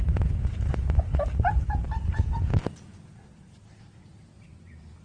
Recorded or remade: recorded